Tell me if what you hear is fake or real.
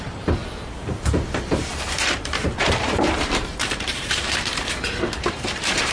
fake